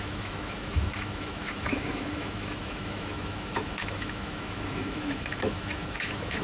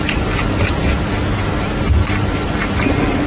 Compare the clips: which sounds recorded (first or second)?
second